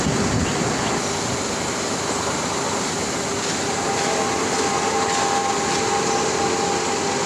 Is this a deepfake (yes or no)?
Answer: no